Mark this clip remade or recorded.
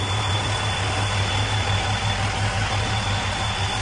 recorded